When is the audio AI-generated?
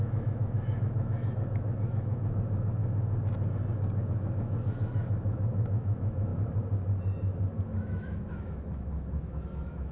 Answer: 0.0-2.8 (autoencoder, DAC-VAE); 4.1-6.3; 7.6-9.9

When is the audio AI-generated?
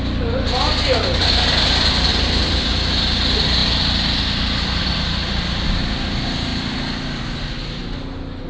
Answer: none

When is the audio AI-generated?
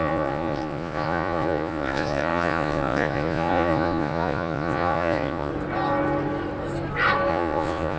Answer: 0.0-5.5 (vocoder, Vocos); 7.3-8.0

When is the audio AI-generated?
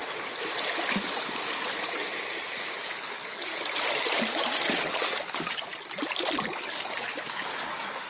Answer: 2.8-3.5 (codec, DAC); 4.9-5.7; 6.5-8.1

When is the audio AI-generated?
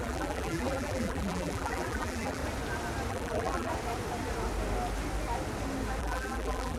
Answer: 0.0-2.4 (vocoder, BigVGAN v2); 3.1-3.7; 6.0-6.8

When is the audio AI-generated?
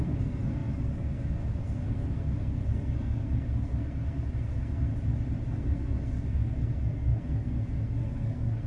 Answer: 0.0-4.9 (codec, SNAC); 5.5-8.7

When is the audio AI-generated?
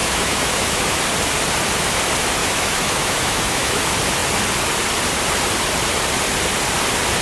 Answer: 0.0-1.0 (autoencoder, DAC-VAE); 2.4-3.8